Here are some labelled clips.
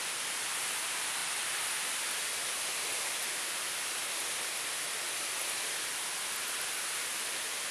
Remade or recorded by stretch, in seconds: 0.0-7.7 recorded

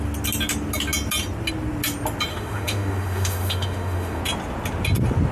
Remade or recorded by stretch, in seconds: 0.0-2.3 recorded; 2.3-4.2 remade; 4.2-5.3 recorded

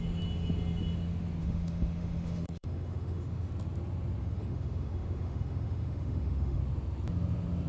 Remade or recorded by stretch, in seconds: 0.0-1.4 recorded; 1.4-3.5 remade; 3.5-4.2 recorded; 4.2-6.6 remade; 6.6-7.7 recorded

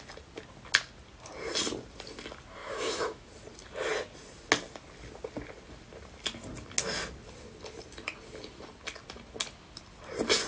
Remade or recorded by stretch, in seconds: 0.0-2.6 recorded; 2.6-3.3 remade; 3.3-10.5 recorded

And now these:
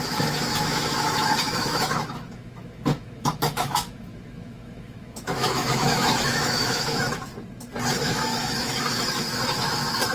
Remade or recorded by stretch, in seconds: 0.0-7.3 remade; 7.3-8.0 recorded; 8.0-10.1 remade

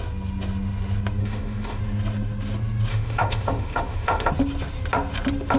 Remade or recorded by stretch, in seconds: 0.0-1.2 recorded; 1.2-1.8 remade; 1.8-2.9 recorded; 2.9-4.3 remade; 4.3-5.6 recorded

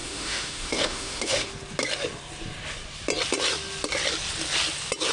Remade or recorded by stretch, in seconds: 0.0-1.5 remade; 1.5-5.1 recorded